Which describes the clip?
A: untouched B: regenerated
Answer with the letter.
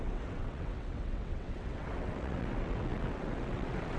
B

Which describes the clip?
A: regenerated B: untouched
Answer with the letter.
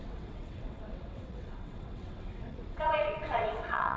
A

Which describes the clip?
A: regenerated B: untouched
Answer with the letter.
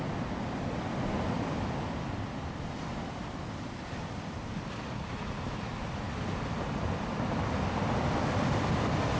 B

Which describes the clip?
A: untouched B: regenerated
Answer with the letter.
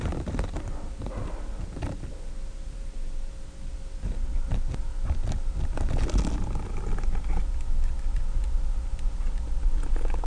A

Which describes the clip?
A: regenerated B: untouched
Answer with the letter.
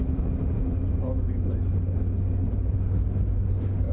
B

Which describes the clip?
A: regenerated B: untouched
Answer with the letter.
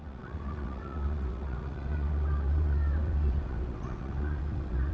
A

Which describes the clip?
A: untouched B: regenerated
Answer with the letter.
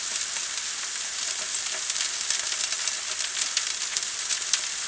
A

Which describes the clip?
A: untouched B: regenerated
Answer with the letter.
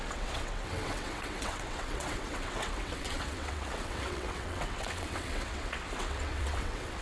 B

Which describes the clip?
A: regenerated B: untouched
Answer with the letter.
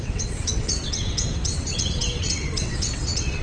A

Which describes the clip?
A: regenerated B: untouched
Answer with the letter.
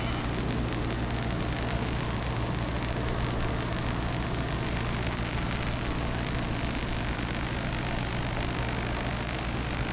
B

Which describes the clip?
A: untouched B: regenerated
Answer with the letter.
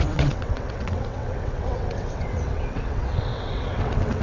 B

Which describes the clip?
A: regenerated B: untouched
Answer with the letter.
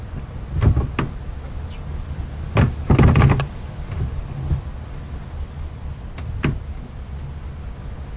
B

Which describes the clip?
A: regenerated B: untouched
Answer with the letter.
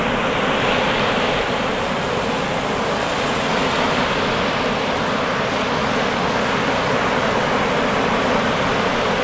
B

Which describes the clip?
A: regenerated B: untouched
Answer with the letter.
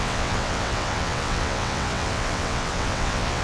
A